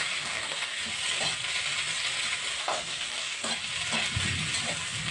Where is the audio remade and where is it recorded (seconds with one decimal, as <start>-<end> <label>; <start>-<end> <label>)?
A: 0.0-0.8 remade; 0.8-2.6 recorded; 2.6-3.5 remade; 3.5-5.1 recorded

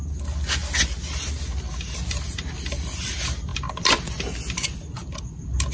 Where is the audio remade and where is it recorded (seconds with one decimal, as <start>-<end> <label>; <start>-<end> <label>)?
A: 0.0-5.7 recorded

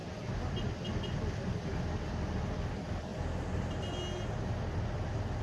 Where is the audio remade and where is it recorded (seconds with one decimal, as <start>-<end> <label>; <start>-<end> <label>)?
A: 0.0-5.4 recorded

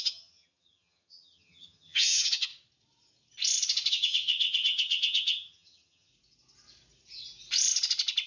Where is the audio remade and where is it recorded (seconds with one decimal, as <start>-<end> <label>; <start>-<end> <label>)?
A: 0.0-2.5 remade; 2.5-3.9 recorded; 3.9-6.1 remade; 6.1-8.3 recorded

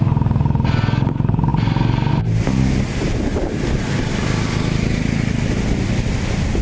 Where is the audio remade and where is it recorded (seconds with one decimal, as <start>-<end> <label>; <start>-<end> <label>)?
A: 0.0-6.6 recorded

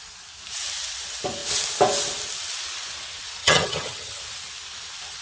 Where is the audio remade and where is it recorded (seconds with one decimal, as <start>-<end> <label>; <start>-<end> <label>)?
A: 0.0-3.4 recorded; 3.4-4.2 remade; 4.2-5.2 recorded

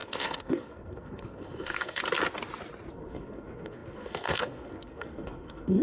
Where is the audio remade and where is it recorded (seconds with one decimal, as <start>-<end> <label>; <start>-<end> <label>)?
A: 0.0-2.0 remade; 2.0-2.9 recorded; 2.9-5.8 remade

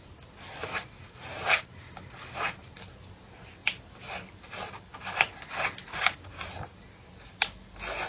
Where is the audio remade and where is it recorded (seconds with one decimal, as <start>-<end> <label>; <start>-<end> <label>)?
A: 0.0-0.7 recorded; 0.7-1.8 remade; 1.8-8.1 recorded